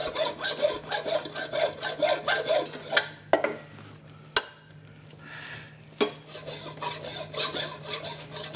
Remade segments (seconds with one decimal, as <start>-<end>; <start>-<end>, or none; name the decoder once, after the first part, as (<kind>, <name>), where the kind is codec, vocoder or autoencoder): none